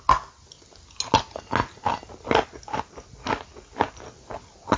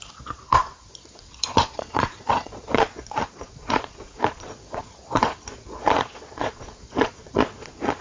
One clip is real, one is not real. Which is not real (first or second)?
second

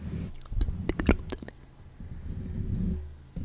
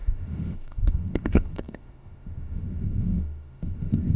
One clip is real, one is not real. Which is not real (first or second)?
second